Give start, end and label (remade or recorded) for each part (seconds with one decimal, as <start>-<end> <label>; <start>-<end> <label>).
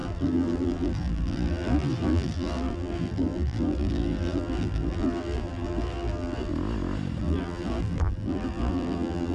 0.0-6.5 remade; 6.5-7.2 recorded; 7.2-9.3 remade